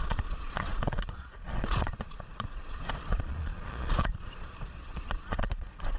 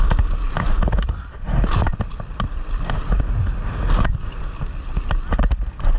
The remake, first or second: first